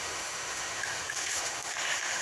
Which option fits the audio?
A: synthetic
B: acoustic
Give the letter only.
A